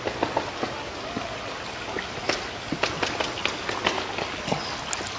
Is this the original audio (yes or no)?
yes